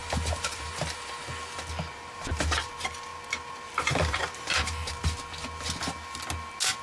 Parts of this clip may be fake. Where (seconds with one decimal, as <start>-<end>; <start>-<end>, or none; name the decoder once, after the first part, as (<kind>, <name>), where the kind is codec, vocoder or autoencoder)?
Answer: 0.0-1.2 (vocoder, BigVGAN v2); 1.9-2.7; 3.1-4.9